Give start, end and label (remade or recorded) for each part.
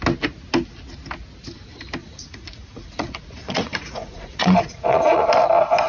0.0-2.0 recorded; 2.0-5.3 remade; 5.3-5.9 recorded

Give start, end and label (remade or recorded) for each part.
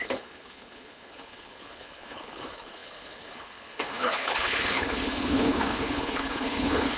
0.0-7.0 remade